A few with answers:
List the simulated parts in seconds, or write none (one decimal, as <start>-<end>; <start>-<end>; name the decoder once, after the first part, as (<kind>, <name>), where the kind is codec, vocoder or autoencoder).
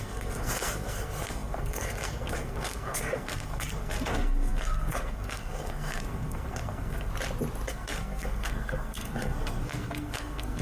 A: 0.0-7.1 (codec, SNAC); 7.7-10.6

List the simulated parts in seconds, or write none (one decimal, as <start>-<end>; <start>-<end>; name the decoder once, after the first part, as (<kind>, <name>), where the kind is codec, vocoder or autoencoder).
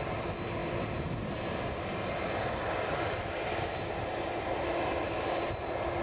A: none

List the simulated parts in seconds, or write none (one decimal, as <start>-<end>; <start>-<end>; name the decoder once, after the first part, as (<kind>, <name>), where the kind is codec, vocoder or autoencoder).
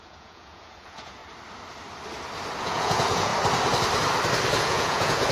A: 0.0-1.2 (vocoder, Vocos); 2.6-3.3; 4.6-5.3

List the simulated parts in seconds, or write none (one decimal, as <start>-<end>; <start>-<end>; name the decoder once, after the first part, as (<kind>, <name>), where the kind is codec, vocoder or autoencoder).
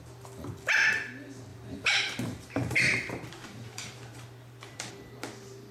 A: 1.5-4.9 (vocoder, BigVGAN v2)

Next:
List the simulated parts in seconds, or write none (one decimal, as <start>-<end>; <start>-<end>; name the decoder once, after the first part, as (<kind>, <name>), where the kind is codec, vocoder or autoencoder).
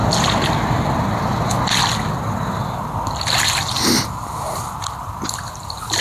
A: none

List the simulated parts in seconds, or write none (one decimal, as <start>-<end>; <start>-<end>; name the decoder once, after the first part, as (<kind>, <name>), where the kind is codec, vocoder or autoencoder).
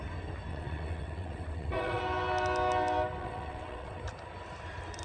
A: 0.5-2.0 (vocoder, WaveNeXt); 3.2-4.0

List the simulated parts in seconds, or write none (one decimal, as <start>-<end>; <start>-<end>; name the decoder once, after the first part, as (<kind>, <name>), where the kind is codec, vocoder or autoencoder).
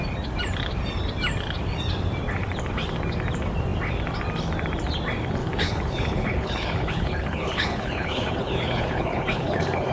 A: 5.4-9.9 (codec, HILCodec)